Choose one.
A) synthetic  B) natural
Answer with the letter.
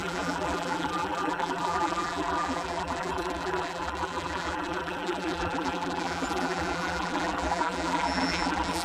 A